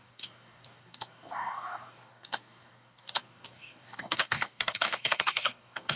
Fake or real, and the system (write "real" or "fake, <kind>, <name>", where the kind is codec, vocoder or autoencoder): fake, codec, DAC